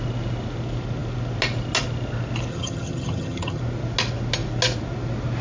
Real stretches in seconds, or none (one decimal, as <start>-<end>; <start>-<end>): 0.0-2.5; 3.6-5.4